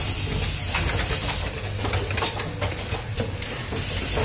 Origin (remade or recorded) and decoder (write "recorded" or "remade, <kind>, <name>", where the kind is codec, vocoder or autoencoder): recorded